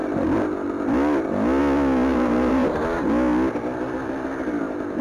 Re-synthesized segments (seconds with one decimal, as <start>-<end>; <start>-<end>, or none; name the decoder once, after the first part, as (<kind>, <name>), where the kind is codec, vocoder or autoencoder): 2.1-2.8 (vocoder, BigVGAN v2)